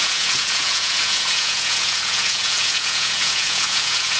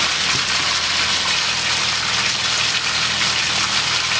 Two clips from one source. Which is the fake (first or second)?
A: first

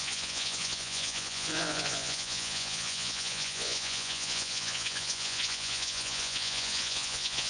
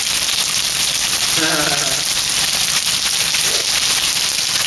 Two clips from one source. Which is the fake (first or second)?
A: first